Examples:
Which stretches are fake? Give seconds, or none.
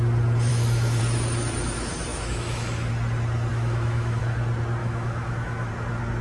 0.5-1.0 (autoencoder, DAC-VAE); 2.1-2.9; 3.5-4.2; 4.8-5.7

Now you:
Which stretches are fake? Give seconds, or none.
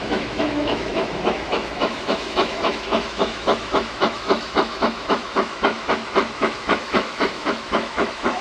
0.0-8.4 (autoencoder, DAC-VAE)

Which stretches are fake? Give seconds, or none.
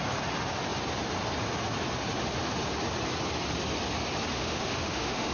4.3-5.3 (autoencoder, DAC-VAE)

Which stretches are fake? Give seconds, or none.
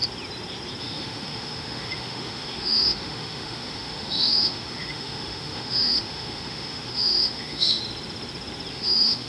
0.8-7.8 (autoencoder, DAC-VAE); 8.7-9.3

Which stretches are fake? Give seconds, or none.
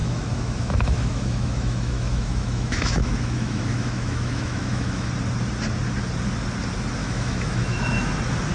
0.0-5.1 (autoencoder, DAC-VAE); 7.0-8.1